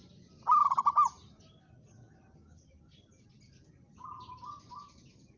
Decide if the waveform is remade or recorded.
recorded